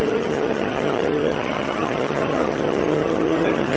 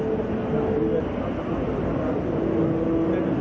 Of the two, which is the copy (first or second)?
first